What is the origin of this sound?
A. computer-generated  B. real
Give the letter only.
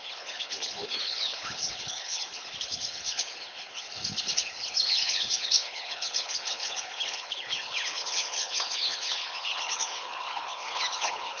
A